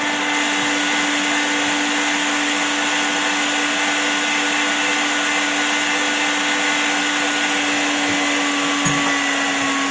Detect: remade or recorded recorded